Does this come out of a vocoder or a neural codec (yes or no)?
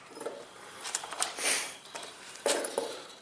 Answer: yes